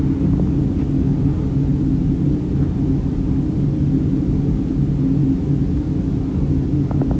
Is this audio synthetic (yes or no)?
no